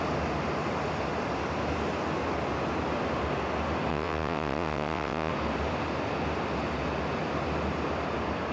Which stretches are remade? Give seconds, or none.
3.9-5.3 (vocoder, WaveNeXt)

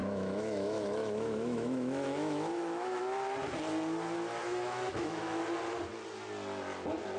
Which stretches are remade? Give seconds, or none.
0.0-3.0 (autoencoder, DAC-VAE); 4.4-5.4

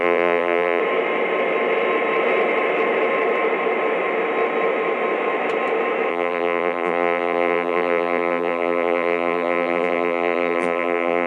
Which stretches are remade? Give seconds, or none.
0.0-0.8 (vocoder, BigVGAN v2); 6.1-11.3

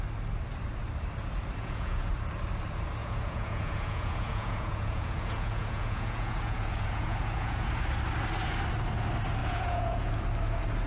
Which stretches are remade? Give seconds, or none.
1.6-2.1 (vocoder, Vocos); 3.0-7.7; 9.4-10.1